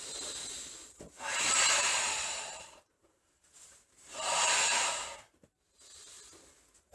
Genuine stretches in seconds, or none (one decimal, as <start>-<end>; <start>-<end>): 0.0-0.8; 4.9-6.9